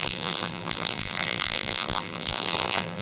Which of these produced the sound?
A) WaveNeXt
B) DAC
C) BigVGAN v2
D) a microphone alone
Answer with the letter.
C